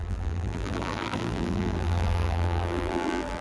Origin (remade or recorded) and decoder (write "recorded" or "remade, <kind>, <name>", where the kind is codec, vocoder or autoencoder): remade, vocoder, BigVGAN v2